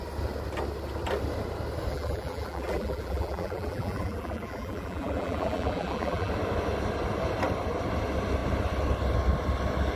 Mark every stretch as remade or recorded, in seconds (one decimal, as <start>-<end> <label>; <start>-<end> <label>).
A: 0.0-1.9 recorded; 1.9-6.3 remade; 6.3-10.0 recorded